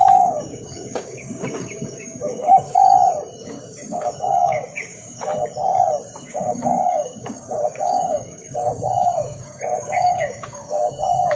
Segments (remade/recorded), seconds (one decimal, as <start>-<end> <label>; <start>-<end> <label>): 0.0-2.8 remade; 2.8-3.4 recorded; 3.4-5.3 remade; 5.3-6.2 recorded; 6.2-11.4 remade